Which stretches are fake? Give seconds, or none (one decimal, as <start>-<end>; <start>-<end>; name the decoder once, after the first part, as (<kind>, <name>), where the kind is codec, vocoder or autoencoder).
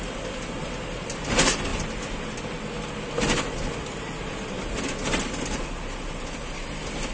none